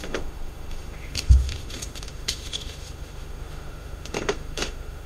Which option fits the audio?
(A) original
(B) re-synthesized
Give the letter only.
B